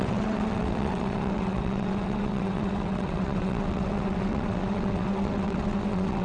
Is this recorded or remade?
remade